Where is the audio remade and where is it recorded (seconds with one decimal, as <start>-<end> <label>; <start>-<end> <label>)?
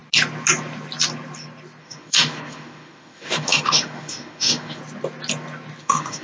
0.0-1.8 recorded; 1.8-4.8 remade; 4.8-5.8 recorded; 5.8-6.2 remade